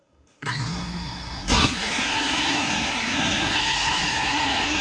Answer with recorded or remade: remade